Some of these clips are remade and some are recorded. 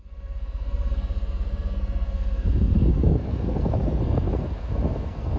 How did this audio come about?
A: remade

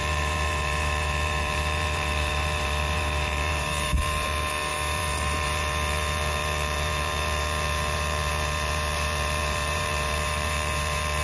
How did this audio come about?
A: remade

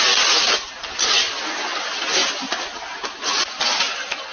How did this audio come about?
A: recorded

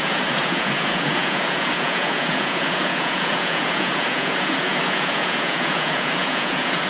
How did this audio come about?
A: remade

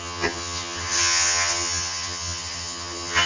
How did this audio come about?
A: remade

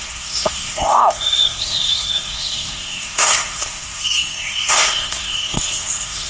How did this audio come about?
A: remade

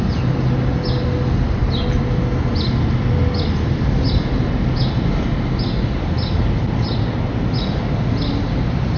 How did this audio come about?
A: recorded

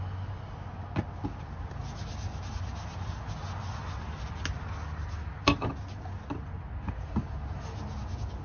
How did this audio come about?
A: recorded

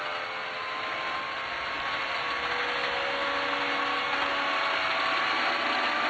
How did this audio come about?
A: recorded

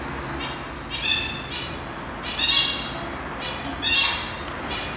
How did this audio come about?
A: recorded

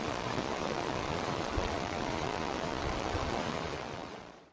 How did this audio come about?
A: remade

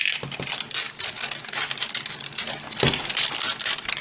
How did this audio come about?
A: recorded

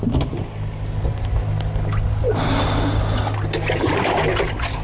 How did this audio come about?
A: recorded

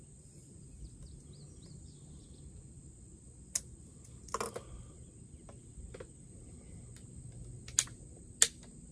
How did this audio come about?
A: recorded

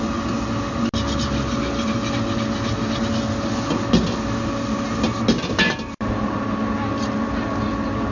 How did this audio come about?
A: recorded